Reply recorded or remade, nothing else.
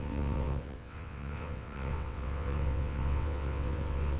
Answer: remade